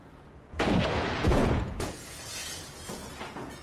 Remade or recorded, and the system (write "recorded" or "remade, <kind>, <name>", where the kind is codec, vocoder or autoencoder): remade, vocoder, Vocos